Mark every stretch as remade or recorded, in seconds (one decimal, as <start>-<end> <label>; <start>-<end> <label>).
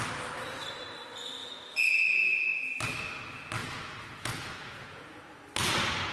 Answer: 0.0-3.6 recorded; 3.6-5.2 remade; 5.2-6.1 recorded